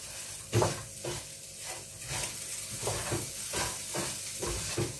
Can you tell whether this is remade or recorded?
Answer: recorded